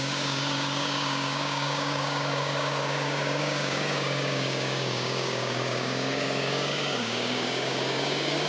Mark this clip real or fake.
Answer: fake